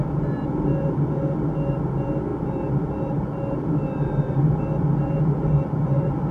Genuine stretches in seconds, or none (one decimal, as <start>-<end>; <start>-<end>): 0.0-6.3